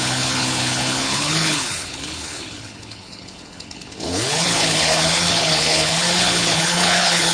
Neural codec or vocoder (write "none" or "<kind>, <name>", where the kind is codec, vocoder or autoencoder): codec, HILCodec